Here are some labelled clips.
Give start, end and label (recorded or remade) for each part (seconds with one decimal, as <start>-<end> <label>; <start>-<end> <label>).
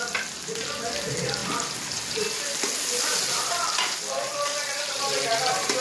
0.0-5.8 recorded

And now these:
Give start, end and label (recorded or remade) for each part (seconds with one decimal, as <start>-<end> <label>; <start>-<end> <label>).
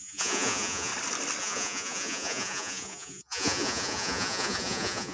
0.0-0.9 remade; 0.9-1.4 recorded; 1.4-5.1 remade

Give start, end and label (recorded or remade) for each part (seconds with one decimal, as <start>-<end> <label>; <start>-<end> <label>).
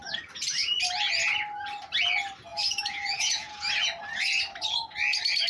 0.0-2.5 recorded; 2.5-3.7 remade; 3.7-5.5 recorded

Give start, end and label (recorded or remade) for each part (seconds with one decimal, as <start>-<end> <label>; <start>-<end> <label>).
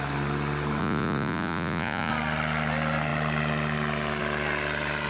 0.0-0.8 recorded; 0.8-2.1 remade; 2.1-5.1 recorded